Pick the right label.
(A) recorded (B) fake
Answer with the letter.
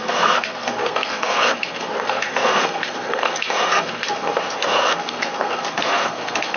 B